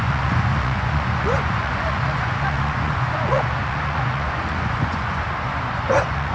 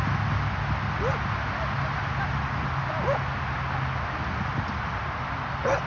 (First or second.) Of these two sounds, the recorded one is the second